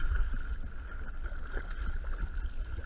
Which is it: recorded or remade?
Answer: recorded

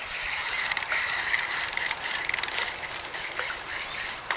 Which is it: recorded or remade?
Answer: remade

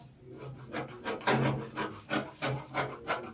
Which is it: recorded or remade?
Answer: recorded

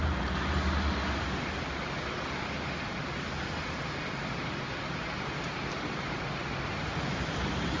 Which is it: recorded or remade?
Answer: recorded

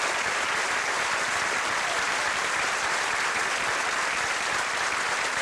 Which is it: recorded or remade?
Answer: remade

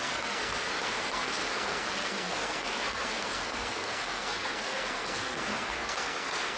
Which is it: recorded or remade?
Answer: remade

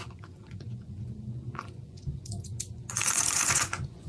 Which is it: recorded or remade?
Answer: remade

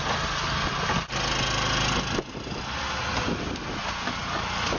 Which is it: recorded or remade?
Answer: recorded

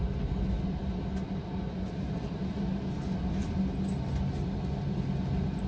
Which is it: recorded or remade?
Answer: recorded